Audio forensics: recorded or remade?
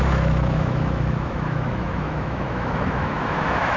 remade